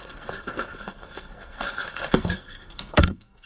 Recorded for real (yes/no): no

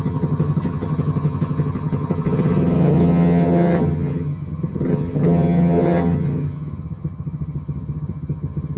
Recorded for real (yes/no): no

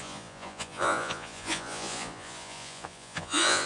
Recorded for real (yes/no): no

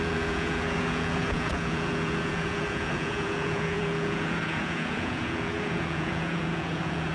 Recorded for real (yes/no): no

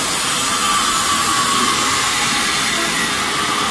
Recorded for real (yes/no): yes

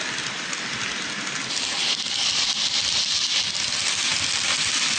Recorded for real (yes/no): yes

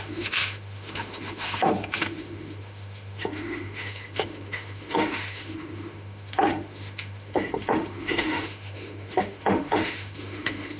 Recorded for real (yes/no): no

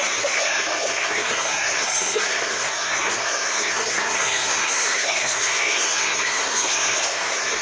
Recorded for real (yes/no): no